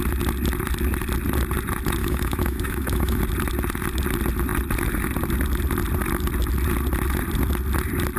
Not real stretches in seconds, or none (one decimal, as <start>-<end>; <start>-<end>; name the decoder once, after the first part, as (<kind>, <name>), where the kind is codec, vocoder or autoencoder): 2.0-3.2 (autoencoder, DAC-VAE)